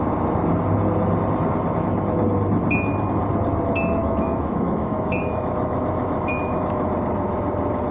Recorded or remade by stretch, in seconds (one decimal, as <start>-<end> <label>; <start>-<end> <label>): 0.0-4.0 recorded; 4.0-6.9 remade; 6.9-7.9 recorded